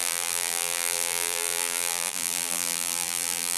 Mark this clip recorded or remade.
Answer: remade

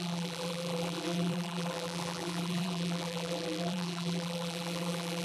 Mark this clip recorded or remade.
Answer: remade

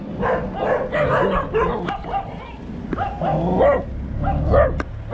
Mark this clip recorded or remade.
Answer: recorded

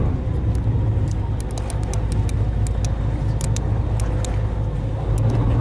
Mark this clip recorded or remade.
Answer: recorded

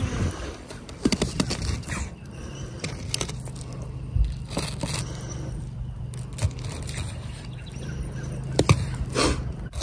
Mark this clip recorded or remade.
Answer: recorded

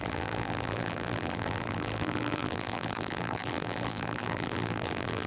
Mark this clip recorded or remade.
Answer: remade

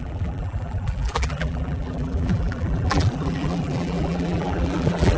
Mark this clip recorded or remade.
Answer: remade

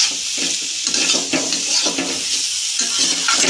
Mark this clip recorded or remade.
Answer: recorded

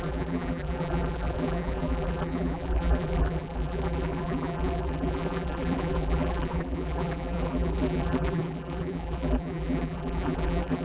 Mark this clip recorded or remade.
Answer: remade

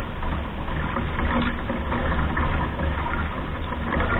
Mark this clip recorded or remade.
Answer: recorded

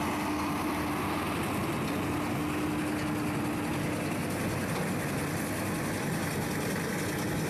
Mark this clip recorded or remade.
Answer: recorded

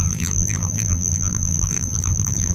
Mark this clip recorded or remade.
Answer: remade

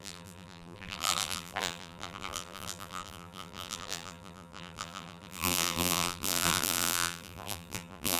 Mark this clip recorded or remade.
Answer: remade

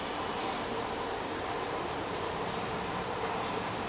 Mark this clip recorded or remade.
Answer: remade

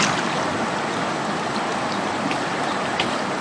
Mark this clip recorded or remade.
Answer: recorded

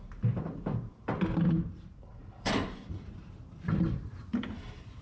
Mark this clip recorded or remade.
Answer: remade